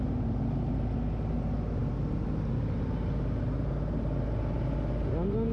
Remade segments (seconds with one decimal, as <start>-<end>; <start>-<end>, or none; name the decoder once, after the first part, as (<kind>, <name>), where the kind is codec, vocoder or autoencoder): none